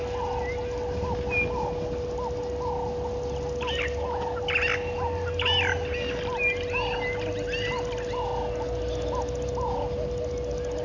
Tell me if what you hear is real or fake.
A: real